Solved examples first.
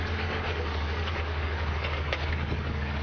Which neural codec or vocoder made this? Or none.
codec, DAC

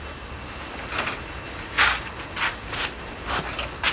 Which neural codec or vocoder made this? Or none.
none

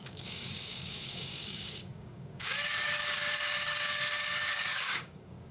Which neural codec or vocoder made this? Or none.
codec, DAC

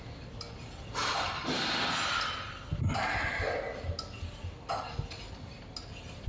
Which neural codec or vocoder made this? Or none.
none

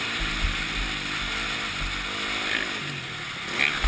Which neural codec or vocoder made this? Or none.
none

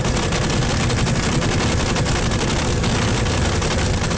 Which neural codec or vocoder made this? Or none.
none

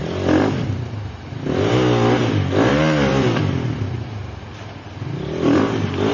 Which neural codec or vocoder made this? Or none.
none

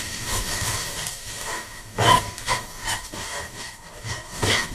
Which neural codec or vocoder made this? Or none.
codec, DAC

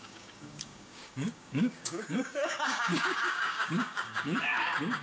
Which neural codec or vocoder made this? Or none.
codec, DAC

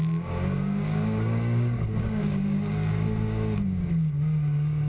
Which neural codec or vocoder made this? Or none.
codec, DAC